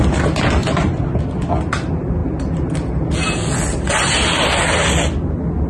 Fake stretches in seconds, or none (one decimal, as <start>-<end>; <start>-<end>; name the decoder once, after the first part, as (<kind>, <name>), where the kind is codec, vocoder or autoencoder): 0.6-1.2 (vocoder, BigVGAN v2)

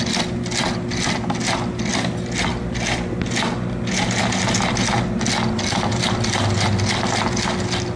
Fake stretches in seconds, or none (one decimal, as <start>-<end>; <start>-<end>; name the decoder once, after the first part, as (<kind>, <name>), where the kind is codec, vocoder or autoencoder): none